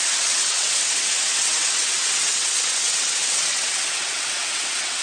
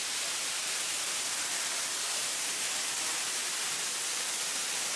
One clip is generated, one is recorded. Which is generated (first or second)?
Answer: first